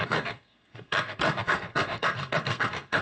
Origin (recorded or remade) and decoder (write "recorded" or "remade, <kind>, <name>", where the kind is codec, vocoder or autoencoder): remade, codec, SNAC